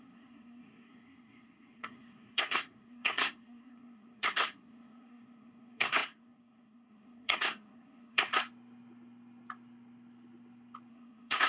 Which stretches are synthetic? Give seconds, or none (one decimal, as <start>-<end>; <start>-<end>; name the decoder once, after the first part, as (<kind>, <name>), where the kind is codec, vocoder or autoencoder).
0.0-8.3 (codec, SNAC); 10.9-11.5